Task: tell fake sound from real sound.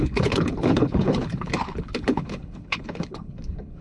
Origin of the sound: fake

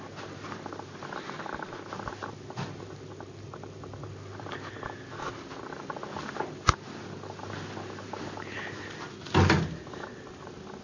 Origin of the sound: real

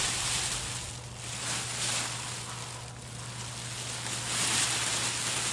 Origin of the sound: real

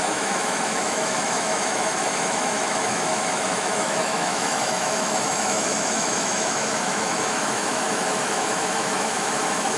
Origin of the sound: fake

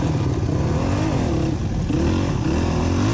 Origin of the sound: real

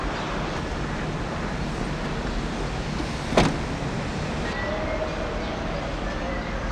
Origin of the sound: real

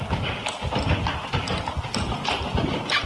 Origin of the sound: real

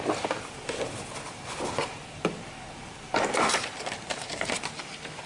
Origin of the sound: real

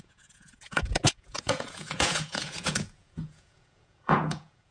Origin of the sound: fake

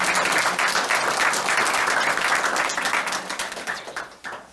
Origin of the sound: real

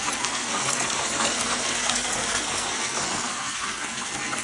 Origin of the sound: fake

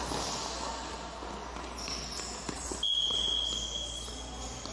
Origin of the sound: real